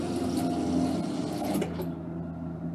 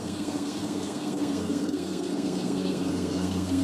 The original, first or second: first